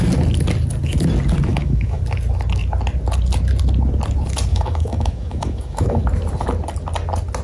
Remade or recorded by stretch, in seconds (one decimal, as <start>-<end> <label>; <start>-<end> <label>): 0.0-1.5 recorded; 1.5-2.0 remade; 2.0-4.5 recorded; 4.5-6.0 remade; 6.0-7.4 recorded

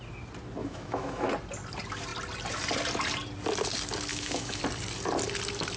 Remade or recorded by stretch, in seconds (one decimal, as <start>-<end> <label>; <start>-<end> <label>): 0.0-0.6 recorded; 0.6-1.3 remade; 1.3-4.1 recorded; 4.1-4.6 remade; 4.6-5.8 recorded

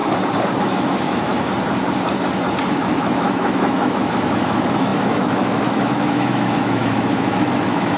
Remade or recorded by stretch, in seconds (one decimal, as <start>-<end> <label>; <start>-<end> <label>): 0.0-0.6 recorded; 0.6-1.3 remade; 1.3-2.7 recorded; 2.7-8.0 remade

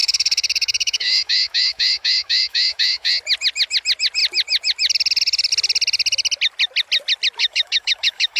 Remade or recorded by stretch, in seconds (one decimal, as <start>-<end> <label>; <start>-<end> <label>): 0.0-3.1 remade; 3.1-7.4 recorded; 7.4-8.4 remade

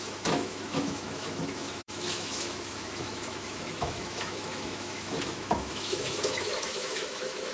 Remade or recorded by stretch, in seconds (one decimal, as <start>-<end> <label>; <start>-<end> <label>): 0.0-7.5 remade

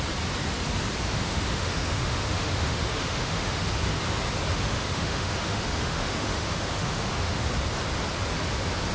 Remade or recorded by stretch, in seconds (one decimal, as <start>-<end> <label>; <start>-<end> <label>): 0.0-1.1 recorded; 1.1-3.8 remade; 3.8-4.5 recorded; 4.5-7.4 remade; 7.4-8.9 recorded